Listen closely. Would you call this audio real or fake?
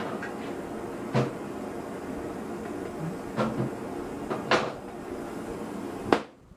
real